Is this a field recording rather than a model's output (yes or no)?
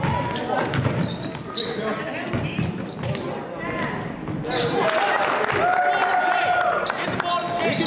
yes